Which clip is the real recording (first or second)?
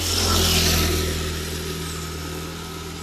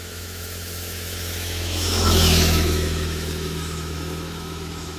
first